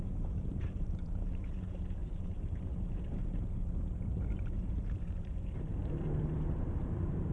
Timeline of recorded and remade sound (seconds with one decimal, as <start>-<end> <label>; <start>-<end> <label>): 0.0-7.3 remade